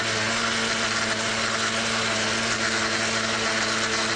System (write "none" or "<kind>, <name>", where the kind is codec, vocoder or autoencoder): none